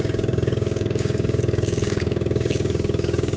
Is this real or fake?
fake